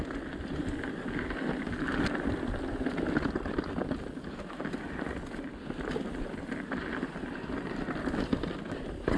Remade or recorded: recorded